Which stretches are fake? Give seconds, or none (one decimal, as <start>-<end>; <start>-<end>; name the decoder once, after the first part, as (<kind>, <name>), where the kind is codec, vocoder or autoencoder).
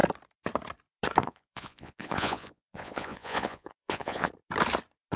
1.2-4.3 (vocoder, Vocos)